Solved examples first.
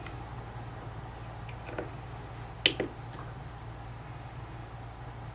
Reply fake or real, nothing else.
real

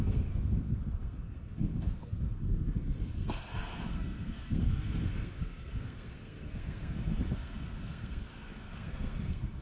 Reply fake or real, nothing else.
fake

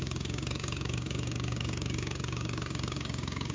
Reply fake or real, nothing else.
fake